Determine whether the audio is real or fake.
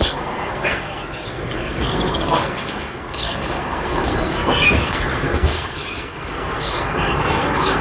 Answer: fake